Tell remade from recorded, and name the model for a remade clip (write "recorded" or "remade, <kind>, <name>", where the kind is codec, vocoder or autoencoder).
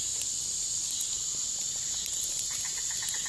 recorded